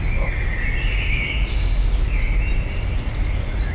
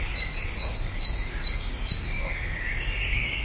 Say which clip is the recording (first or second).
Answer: first